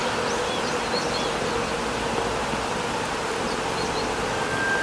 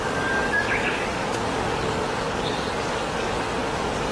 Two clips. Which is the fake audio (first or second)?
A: second